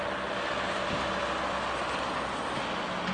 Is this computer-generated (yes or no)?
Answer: no